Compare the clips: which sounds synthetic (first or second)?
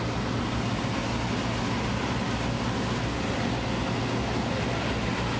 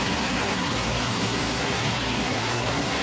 second